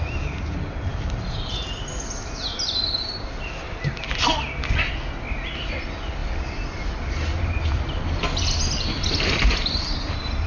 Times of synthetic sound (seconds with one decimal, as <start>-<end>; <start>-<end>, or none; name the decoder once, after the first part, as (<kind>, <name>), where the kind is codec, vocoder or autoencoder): 0.9-1.6 (vocoder, BigVGAN v2); 6.2-8.0; 8.6-10.5